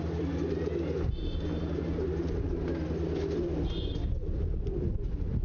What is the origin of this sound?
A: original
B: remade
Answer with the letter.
A